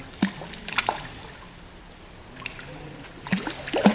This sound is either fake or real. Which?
real